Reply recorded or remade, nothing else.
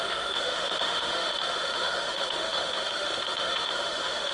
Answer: remade